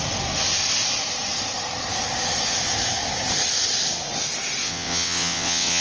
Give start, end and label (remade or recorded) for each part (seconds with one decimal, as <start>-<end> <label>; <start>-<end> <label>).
0.0-4.6 recorded; 4.6-5.8 remade